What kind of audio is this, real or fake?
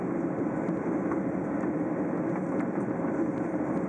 real